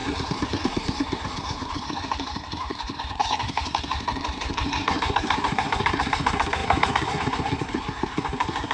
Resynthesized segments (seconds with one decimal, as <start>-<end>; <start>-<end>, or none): 0.0-8.7